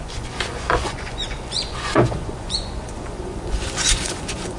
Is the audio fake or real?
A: fake